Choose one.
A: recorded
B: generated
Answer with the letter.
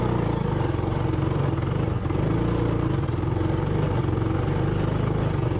A